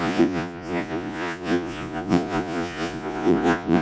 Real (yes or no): no